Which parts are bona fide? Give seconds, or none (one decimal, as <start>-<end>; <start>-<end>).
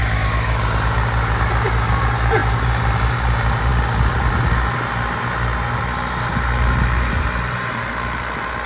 0.6-8.7